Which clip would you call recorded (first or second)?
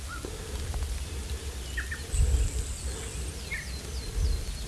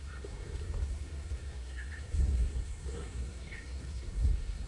first